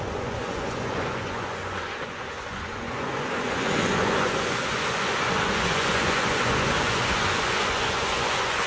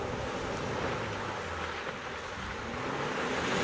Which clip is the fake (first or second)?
first